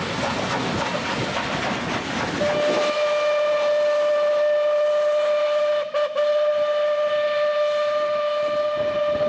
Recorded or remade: recorded